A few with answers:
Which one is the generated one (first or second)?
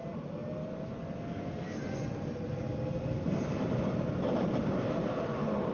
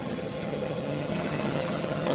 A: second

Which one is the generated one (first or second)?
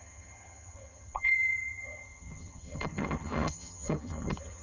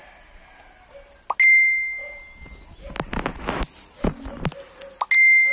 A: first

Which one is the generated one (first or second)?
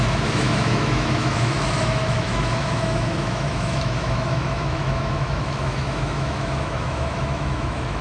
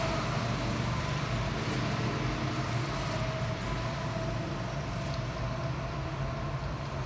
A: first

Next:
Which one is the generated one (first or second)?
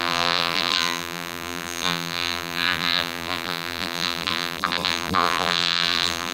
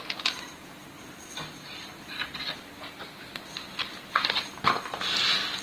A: first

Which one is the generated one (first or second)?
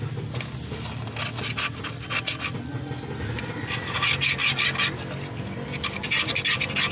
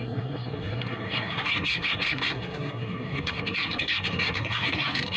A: second